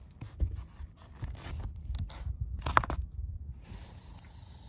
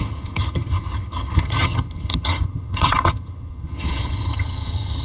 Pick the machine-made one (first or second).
second